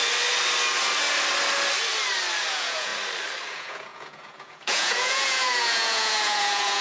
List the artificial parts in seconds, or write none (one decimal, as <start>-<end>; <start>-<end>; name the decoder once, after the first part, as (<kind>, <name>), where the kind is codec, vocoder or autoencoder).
2.5-2.9 (vocoder, Vocos); 3.5-6.8